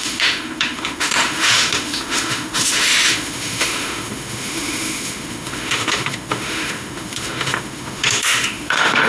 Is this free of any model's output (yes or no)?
no